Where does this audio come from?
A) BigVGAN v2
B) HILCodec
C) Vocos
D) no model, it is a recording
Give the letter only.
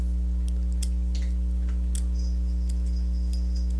D